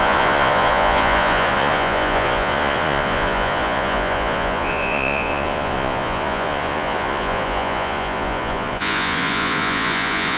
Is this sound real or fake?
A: fake